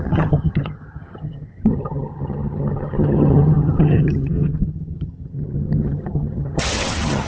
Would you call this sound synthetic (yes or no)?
yes